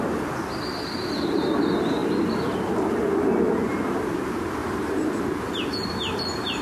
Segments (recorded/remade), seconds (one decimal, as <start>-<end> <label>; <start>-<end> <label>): 0.0-4.6 recorded; 4.6-5.4 remade; 5.4-6.6 recorded